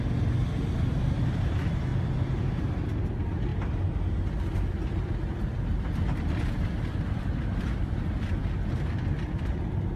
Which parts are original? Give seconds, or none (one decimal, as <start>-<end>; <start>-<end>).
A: 3.5-6.2; 8.4-9.3